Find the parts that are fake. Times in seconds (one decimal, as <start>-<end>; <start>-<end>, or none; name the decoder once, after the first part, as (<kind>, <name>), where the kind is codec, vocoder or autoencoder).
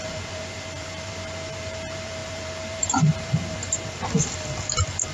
0.0-5.1 (vocoder, BigVGAN v2)